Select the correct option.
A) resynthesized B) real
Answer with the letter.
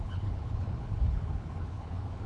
A